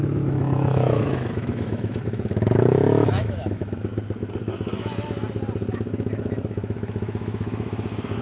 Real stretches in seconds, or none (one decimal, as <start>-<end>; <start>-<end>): 3.9-5.7